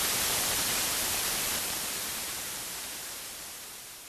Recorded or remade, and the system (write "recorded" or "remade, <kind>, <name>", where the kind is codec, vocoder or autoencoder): remade, vocoder, BigVGAN v2